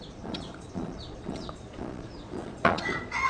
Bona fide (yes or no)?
no